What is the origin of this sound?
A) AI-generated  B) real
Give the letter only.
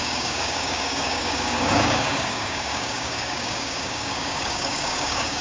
A